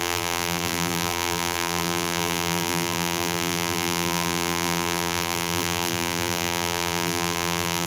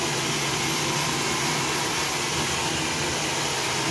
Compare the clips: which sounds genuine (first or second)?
second